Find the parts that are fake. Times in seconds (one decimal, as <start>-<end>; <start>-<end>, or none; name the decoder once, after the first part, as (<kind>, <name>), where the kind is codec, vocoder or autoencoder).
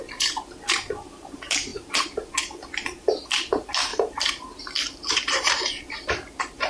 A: 0.0-6.7 (vocoder, BigVGAN v2)